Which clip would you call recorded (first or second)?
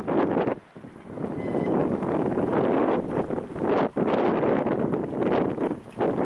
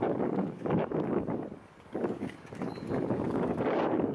first